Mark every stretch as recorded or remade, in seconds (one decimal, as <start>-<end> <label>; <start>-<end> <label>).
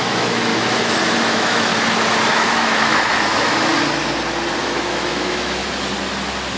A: 0.0-0.5 remade; 0.5-1.2 recorded; 1.2-1.7 remade; 1.7-2.3 recorded; 2.3-3.7 remade; 3.7-4.6 recorded; 4.6-5.6 remade; 5.6-6.6 recorded